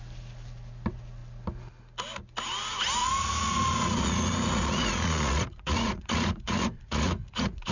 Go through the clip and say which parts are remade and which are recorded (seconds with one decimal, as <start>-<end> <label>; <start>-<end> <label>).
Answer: 0.0-3.0 recorded; 3.0-7.7 remade